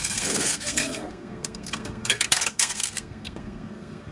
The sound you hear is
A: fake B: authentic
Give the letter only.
A